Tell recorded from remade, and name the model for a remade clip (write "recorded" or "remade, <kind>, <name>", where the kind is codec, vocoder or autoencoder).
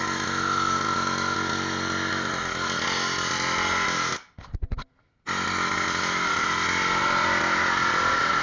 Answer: recorded